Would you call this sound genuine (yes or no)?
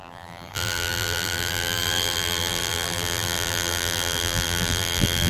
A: no